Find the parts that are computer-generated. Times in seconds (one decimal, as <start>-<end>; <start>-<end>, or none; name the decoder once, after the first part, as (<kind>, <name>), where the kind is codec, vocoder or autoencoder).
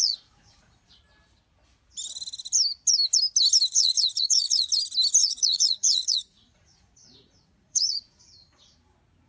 0.0-1.0 (vocoder, Vocos); 3.7-4.7; 5.2-8.2